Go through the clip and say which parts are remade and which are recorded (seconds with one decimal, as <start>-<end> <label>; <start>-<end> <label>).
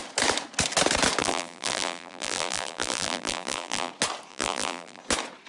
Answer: 0.0-1.2 recorded; 1.2-3.9 remade; 3.9-4.3 recorded; 4.3-5.0 remade; 5.0-5.5 recorded